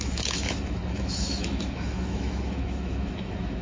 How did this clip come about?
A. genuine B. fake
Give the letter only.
B